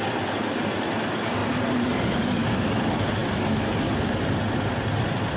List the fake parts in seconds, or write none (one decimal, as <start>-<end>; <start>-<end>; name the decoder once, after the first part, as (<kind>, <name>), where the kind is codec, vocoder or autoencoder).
1.4-2.5 (vocoder, BigVGAN v2)